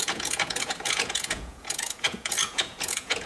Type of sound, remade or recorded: remade